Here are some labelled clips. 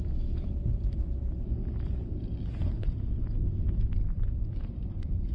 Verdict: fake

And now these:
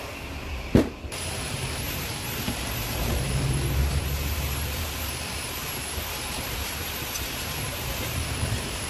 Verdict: fake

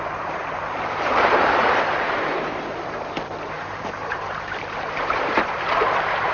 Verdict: fake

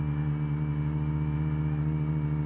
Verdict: fake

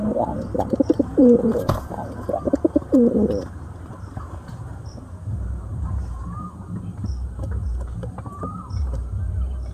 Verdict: fake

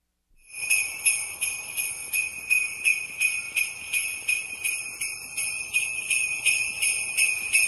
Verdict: real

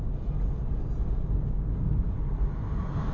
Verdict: real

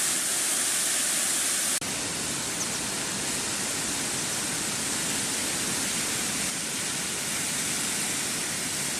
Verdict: real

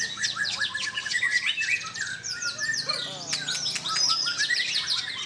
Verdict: real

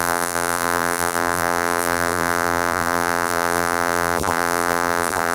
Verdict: fake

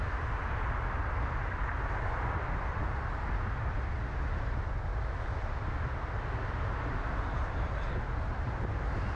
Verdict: real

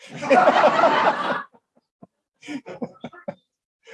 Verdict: fake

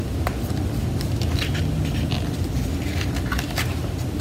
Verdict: real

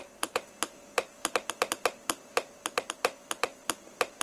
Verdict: real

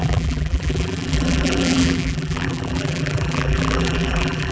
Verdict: fake